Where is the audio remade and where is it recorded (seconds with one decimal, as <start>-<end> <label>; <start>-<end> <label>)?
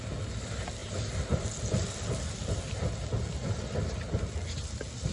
0.0-5.1 recorded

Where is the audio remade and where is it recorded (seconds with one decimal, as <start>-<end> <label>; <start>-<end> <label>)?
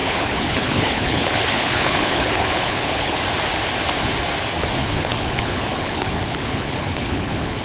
0.0-3.2 remade; 3.2-4.8 recorded; 4.8-7.6 remade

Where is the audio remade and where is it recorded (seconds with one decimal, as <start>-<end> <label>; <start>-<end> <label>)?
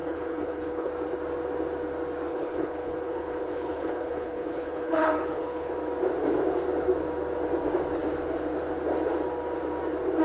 0.0-0.9 remade; 0.9-2.3 recorded; 2.3-5.7 remade; 5.7-10.2 recorded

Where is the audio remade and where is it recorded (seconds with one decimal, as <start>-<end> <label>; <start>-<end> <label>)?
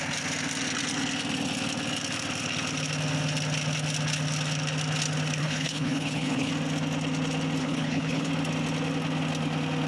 0.0-5.4 recorded; 5.4-6.5 remade; 6.5-7.6 recorded; 7.6-8.3 remade; 8.3-9.9 recorded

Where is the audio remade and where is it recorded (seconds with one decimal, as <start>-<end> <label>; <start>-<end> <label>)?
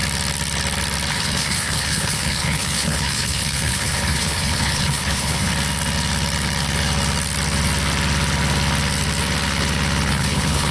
0.0-1.1 recorded; 1.1-5.5 remade; 5.5-10.1 recorded; 10.1-10.7 remade